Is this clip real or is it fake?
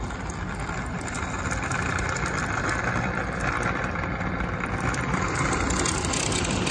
fake